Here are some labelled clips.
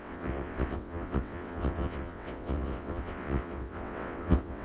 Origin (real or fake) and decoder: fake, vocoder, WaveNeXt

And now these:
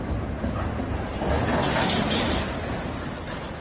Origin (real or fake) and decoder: real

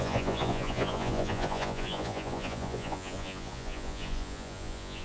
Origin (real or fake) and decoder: fake, vocoder, Vocos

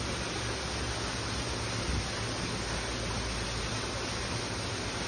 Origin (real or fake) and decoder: real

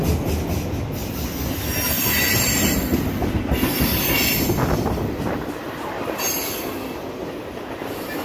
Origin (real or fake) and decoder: real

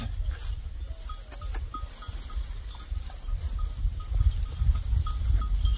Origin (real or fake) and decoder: real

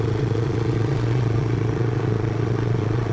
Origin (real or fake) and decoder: fake, vocoder, Vocos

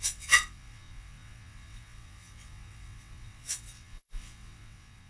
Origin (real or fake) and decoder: fake, vocoder, WaveNeXt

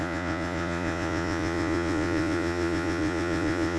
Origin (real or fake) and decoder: fake, vocoder, Vocos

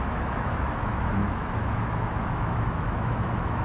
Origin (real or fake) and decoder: fake, autoencoder, DAC-VAE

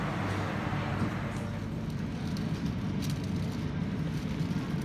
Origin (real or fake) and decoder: real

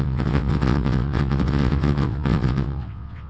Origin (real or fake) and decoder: fake, vocoder, WaveNeXt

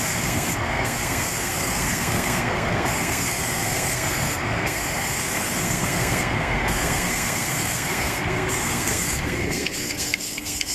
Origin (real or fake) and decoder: fake, codec, SNAC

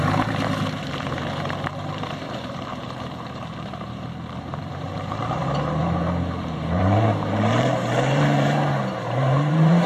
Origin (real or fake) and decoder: fake, vocoder, BigVGAN v2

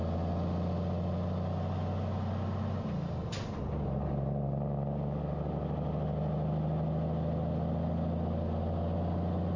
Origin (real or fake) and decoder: real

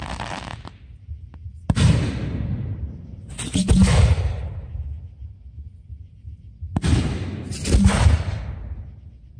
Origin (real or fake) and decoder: real